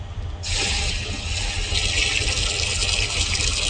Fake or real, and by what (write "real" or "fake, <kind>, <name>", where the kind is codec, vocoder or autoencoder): real